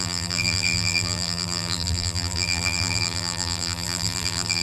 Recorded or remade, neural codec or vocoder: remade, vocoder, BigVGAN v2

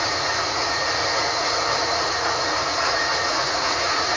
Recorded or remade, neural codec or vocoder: remade, vocoder, Vocos